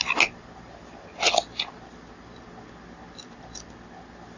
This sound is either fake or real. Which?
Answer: real